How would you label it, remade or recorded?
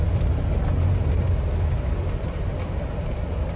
recorded